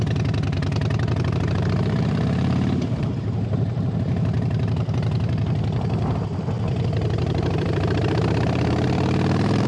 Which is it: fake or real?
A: fake